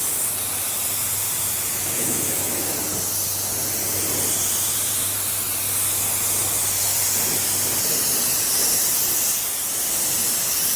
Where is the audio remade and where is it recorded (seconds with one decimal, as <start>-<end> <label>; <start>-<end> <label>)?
0.0-1.8 recorded; 1.8-2.8 remade; 2.8-10.8 recorded